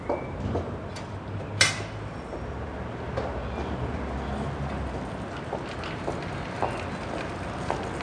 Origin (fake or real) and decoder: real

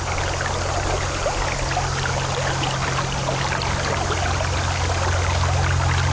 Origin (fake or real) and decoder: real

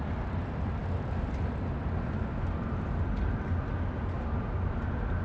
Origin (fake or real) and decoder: real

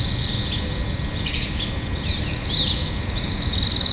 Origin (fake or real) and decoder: real